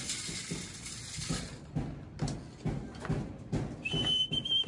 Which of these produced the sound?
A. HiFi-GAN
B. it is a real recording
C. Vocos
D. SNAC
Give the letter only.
B